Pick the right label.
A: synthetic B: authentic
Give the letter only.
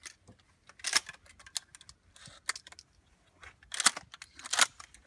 B